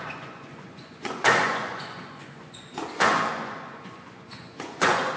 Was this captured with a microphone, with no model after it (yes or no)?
no